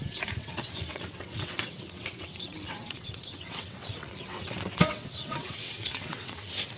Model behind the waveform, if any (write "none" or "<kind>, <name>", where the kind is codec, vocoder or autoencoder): vocoder, WaveNeXt